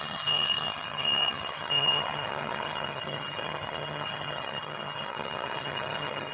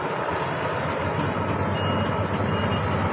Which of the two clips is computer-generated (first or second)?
first